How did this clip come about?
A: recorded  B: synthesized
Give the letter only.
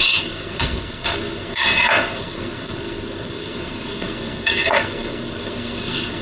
B